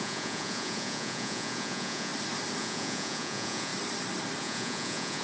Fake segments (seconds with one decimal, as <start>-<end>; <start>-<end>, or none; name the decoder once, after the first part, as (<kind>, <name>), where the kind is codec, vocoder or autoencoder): 0.0-2.1 (vocoder, Vocos); 2.6-3.7; 4.4-5.2